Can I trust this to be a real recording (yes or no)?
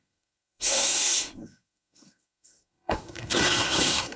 no